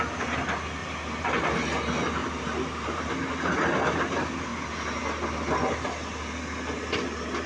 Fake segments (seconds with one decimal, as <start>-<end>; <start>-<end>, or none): 0.8-1.4; 2.2-3.1; 4.5-5.0